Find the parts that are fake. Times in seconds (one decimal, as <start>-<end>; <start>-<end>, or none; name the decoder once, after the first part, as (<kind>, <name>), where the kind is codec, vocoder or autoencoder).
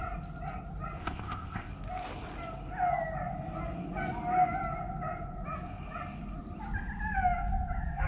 1.0-1.7 (codec, ZipCodec)